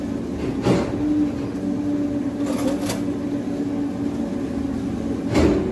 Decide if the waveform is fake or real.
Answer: real